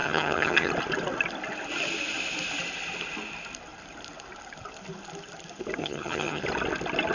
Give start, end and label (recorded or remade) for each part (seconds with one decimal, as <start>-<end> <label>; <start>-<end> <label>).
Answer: 0.0-0.7 remade; 0.7-5.8 recorded; 5.8-6.4 remade; 6.4-7.1 recorded